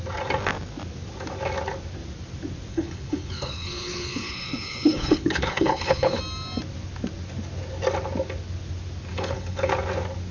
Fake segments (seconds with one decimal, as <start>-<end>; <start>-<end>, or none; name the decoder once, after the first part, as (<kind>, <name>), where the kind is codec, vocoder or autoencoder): 2.7-6.2 (codec, HILCodec); 9.1-9.7